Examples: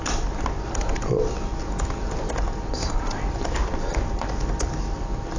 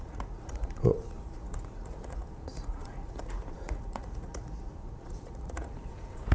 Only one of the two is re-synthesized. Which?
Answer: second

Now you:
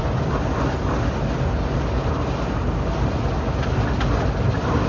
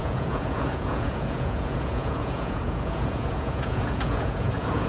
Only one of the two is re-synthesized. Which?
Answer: second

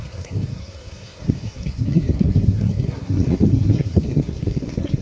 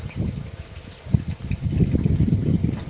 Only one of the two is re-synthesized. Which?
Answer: first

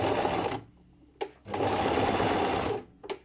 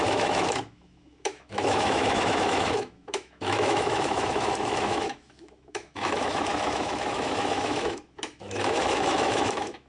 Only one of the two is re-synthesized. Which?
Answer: second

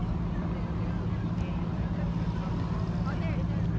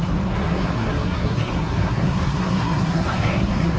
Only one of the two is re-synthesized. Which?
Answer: second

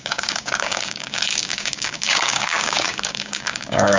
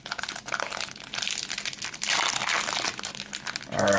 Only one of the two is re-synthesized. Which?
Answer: first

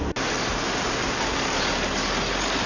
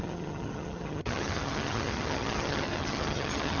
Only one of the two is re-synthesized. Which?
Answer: second